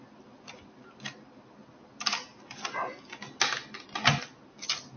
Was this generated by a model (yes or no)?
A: no